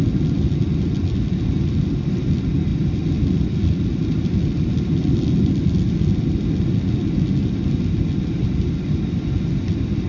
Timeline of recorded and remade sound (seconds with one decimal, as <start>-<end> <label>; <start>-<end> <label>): 0.0-10.1 recorded